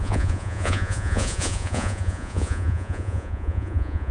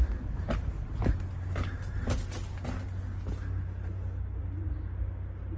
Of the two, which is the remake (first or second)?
first